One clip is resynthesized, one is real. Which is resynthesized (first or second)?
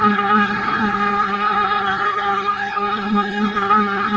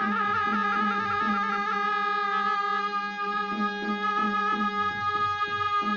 first